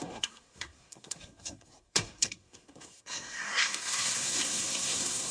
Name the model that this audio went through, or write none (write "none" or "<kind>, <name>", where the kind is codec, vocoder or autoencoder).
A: codec, SNAC